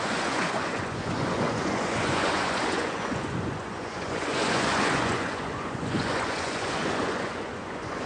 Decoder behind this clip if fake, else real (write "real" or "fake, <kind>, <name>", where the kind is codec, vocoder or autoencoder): fake, vocoder, Vocos